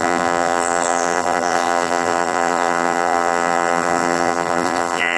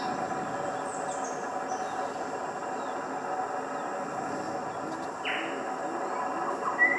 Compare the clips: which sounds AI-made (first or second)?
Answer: first